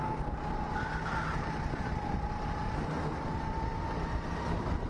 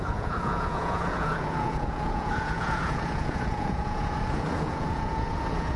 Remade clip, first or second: second